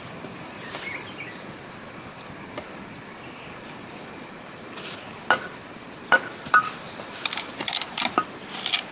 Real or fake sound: real